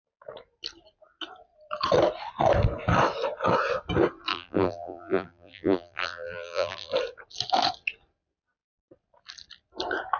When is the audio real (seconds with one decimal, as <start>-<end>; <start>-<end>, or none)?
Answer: 0.0-4.3; 6.9-10.2